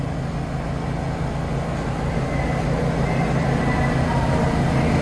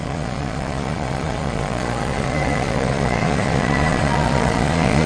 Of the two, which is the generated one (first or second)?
second